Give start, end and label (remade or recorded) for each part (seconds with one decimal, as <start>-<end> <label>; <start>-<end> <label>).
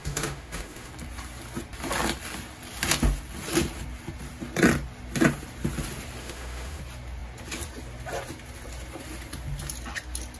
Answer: 0.0-0.9 remade; 0.9-6.2 recorded; 6.2-6.8 remade; 6.8-10.4 recorded